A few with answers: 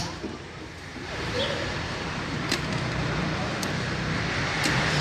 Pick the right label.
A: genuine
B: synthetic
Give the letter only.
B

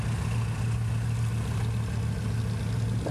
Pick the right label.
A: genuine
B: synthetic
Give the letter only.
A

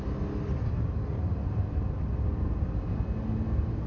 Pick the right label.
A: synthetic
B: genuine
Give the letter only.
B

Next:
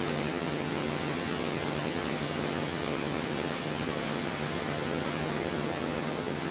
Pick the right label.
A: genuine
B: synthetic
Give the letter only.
B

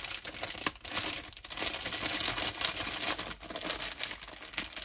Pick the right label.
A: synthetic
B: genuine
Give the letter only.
B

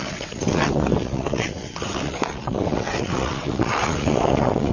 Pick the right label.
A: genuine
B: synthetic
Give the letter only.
B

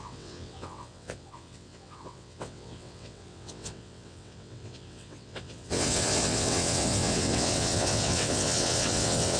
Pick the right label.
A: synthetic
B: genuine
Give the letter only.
A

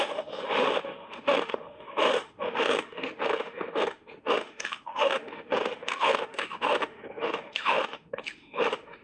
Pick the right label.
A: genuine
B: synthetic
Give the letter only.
B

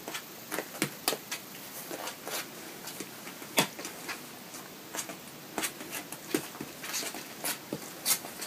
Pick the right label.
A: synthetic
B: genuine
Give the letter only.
B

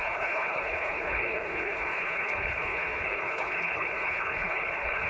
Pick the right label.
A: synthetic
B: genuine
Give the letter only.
A